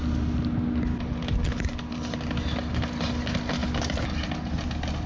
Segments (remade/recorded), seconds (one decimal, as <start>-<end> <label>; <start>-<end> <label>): 0.0-5.1 recorded